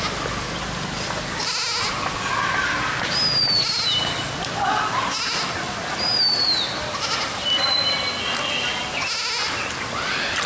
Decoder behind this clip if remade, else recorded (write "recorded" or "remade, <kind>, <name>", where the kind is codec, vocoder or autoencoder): recorded